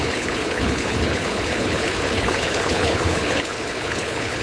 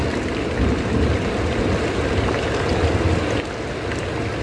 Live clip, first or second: second